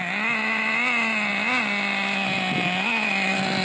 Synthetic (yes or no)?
no